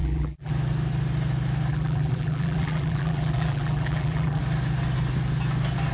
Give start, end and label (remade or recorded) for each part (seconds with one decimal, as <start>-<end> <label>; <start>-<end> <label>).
0.0-0.5 remade; 0.5-1.7 recorded; 1.7-4.4 remade; 4.4-5.9 recorded